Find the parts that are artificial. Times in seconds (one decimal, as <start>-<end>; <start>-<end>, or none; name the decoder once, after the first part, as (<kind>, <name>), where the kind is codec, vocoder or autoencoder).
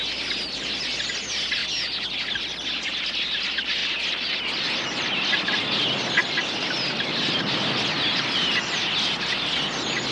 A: none